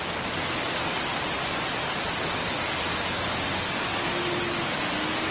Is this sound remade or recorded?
recorded